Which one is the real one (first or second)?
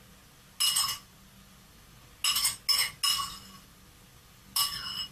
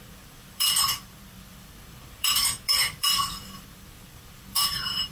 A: first